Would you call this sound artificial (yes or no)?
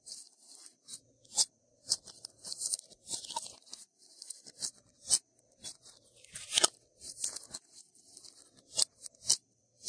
no